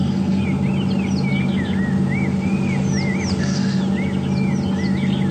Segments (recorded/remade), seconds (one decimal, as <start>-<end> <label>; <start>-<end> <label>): 0.0-0.4 remade; 0.4-3.4 recorded; 3.4-3.8 remade; 3.8-5.3 recorded